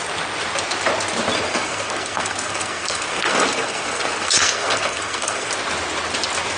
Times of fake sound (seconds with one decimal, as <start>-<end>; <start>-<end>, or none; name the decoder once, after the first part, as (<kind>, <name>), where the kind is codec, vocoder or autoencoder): 1.5-5.5 (codec, SNAC)

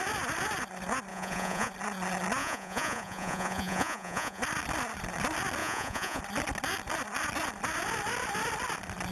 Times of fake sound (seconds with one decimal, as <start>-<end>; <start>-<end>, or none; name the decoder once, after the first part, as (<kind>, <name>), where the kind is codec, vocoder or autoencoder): 1.1-1.7 (vocoder, Vocos); 2.4-4.4; 5.6-6.2

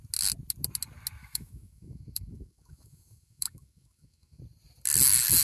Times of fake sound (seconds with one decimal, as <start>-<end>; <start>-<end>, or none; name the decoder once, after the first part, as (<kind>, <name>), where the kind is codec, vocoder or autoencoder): 1.2-4.4 (autoencoder, DAC-VAE)

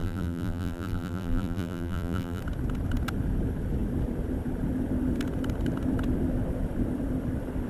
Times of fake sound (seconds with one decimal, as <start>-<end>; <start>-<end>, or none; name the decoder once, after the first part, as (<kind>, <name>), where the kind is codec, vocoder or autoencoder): 0.0-2.4 (vocoder, BigVGAN v2)

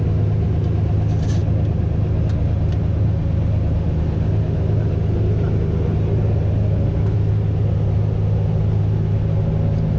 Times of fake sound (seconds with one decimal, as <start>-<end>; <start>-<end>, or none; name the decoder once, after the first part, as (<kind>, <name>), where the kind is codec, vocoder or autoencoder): none

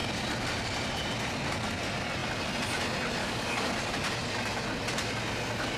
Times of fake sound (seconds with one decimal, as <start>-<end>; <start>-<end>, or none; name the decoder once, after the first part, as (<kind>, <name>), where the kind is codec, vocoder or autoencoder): 3.2-3.7 (codec, DAC)